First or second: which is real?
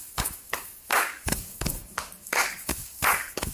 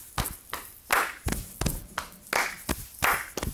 second